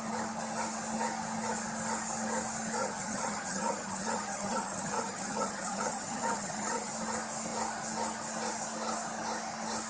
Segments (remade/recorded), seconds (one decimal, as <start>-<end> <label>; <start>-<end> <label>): 0.0-2.8 recorded; 2.8-6.9 remade; 6.9-9.9 recorded